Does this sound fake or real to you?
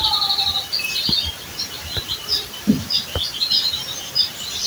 fake